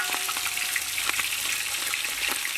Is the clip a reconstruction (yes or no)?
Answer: no